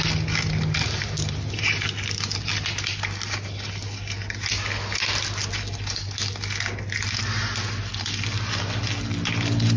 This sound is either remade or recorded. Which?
recorded